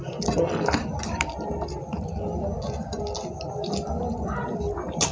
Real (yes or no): yes